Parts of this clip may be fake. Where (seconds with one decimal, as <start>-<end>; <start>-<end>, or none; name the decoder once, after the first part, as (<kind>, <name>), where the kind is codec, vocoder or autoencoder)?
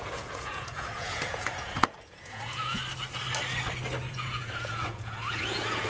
0.0-2.8 (vocoder, Vocos); 4.1-5.9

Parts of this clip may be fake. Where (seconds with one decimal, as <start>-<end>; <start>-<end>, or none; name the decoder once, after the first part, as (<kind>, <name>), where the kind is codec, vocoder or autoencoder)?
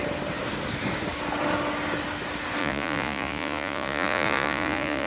2.6-5.1 (vocoder, Vocos)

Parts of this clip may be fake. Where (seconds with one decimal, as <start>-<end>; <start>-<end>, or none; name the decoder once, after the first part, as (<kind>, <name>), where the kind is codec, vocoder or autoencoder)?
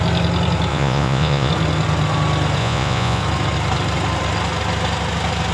0.7-1.5 (vocoder, Vocos); 2.6-3.2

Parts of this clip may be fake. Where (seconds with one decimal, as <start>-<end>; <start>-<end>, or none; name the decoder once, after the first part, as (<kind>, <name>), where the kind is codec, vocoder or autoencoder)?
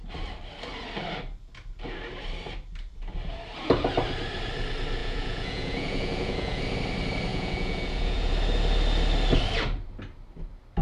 5.0-6.6 (vocoder, Vocos); 7.3-8.3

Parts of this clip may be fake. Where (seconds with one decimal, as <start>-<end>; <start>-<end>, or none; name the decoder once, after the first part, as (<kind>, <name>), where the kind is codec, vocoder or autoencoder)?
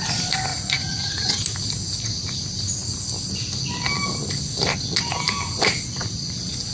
0.5-1.4 (vocoder, Vocos)